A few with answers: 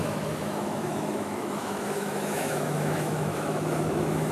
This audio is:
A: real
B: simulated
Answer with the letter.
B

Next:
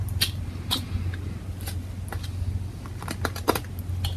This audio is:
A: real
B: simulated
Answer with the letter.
A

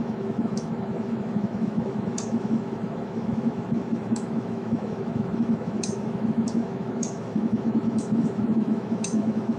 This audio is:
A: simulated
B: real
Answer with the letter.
A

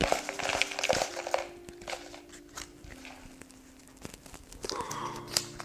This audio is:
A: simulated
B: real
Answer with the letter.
B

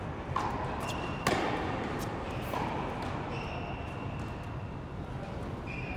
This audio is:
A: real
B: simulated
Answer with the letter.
A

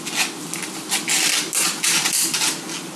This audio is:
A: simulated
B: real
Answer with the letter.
B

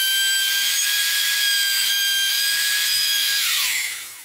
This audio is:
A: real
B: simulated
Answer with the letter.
B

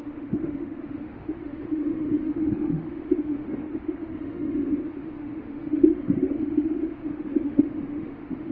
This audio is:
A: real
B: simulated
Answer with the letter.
B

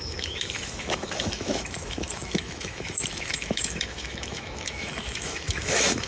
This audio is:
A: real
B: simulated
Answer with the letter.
B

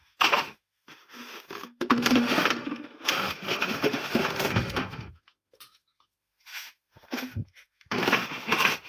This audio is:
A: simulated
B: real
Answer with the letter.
A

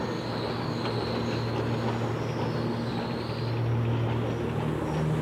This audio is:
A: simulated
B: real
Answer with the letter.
B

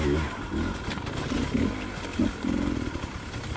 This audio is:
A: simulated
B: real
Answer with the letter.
B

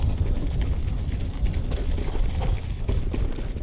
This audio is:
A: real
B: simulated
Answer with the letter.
A